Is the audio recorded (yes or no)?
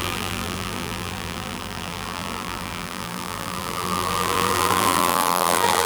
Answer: no